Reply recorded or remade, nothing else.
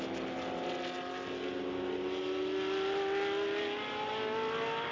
recorded